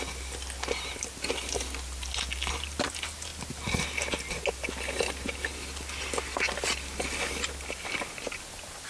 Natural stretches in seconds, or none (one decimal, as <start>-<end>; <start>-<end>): 0.0-8.9